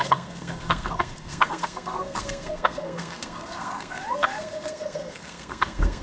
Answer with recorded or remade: remade